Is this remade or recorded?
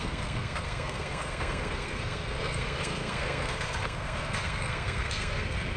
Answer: remade